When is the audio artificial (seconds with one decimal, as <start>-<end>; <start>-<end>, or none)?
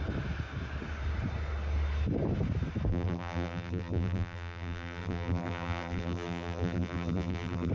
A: 2.9-7.7